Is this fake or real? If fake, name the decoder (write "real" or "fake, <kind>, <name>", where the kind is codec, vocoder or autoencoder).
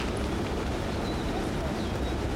real